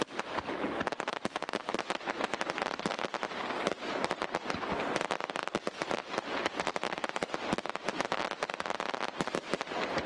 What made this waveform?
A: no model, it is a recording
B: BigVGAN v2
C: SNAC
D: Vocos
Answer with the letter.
A